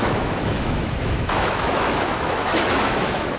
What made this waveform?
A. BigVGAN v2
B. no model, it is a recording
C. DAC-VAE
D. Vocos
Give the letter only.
C